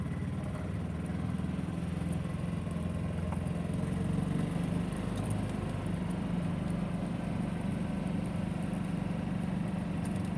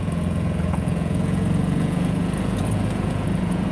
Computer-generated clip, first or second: second